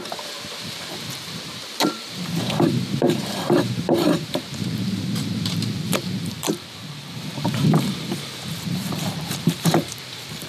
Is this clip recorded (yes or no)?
no